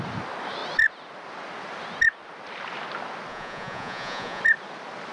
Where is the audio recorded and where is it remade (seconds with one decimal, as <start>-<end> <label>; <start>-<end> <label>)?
0.0-3.3 recorded; 3.3-4.4 remade; 4.4-5.1 recorded